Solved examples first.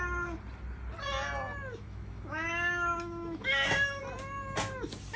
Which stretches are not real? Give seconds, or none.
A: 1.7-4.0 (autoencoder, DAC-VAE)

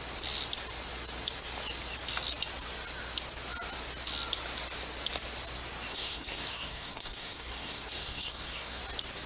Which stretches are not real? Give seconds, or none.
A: 5.9-8.8 (codec, SNAC)

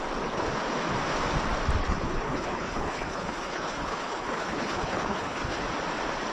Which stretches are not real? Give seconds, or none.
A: 1.8-5.6 (codec, HILCodec)

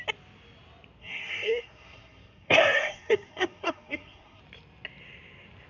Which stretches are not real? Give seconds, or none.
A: 1.0-4.4 (codec, SNAC)

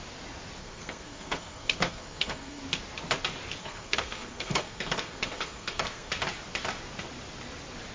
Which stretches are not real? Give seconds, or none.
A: 0.6-2.6 (codec, SNAC); 3.6-6.1